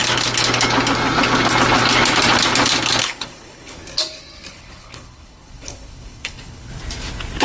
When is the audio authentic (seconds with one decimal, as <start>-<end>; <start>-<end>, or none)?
0.0-3.0; 3.8-4.5; 6.7-7.4